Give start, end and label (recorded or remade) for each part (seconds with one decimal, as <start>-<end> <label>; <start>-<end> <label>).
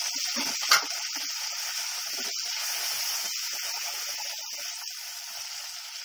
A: 0.0-6.0 recorded